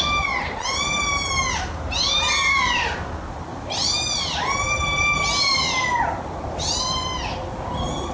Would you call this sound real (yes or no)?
yes